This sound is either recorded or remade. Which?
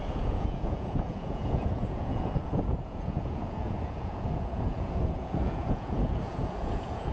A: remade